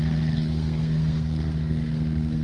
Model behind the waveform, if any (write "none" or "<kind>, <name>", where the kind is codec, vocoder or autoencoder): codec, SNAC